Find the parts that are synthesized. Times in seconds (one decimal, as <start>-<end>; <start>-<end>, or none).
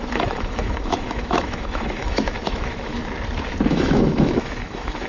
0.0-3.0; 3.7-5.1